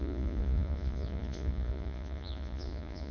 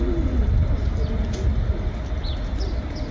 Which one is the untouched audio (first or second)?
second